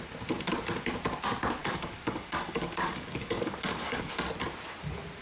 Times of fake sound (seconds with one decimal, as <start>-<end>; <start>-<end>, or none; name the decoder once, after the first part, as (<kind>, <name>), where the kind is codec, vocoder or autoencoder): 1.6-4.1 (codec, DAC)

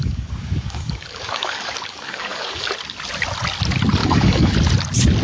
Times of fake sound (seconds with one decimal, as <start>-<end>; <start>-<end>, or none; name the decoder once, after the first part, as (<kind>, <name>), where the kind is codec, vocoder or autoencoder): 0.0-2.7 (codec, DAC); 4.0-4.5

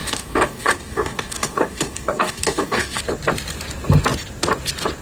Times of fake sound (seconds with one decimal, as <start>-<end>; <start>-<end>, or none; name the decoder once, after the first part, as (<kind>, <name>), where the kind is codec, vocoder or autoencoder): 0.0-3.0 (codec, DAC)